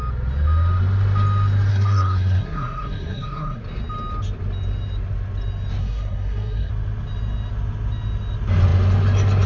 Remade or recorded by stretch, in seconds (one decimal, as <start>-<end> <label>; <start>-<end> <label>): 0.0-1.7 recorded; 1.7-3.6 remade; 3.6-5.8 recorded; 5.8-6.7 remade; 6.7-9.5 recorded